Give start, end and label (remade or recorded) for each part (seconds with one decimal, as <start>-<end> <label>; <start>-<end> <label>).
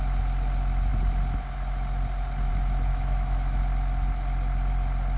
0.0-2.9 recorded; 2.9-3.6 remade; 3.6-5.2 recorded